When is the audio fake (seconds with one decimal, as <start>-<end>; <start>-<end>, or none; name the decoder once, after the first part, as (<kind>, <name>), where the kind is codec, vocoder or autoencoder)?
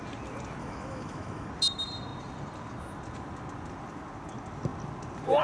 0.6-1.5 (autoencoder, DAC-VAE)